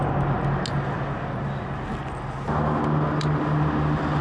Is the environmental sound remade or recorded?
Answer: recorded